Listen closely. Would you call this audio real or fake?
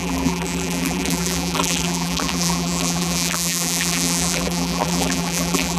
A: fake